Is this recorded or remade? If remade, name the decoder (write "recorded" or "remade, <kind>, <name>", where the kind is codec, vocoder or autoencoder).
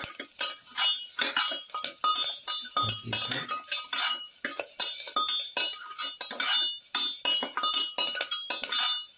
recorded